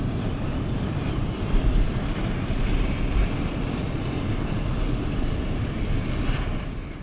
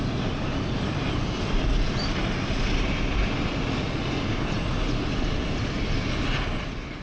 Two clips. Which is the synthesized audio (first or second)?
first